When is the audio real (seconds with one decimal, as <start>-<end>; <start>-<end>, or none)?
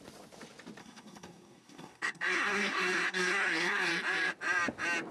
0.0-0.8; 3.9-5.1